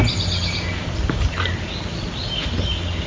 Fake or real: real